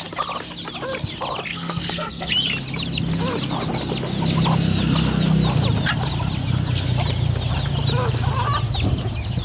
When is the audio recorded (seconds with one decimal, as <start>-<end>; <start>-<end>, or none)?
0.0-1.5; 2.3-9.4